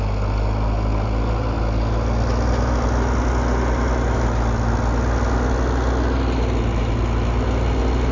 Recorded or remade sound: recorded